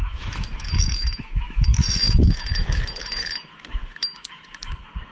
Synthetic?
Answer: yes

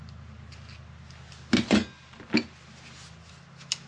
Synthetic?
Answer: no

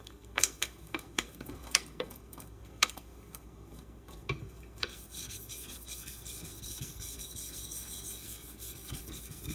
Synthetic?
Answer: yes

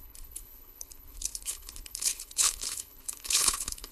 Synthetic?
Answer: yes